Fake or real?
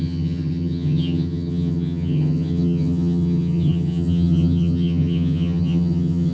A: fake